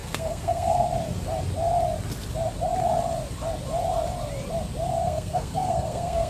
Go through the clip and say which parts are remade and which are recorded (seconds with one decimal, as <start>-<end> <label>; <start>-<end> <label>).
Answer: 0.0-0.9 remade; 0.9-5.0 recorded; 5.0-6.3 remade